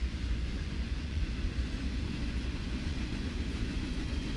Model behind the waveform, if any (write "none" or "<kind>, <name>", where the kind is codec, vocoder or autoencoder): vocoder, Vocos